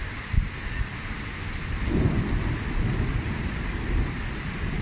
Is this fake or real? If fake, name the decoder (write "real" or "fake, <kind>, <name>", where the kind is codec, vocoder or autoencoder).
real